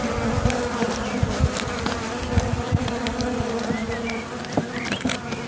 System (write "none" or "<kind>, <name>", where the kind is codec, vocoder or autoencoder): none